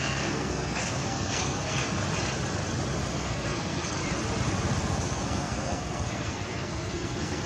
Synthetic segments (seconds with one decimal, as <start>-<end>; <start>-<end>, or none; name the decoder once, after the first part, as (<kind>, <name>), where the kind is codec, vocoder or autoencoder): 0.0-2.0 (codec, SNAC); 3.1-4.0; 4.9-7.5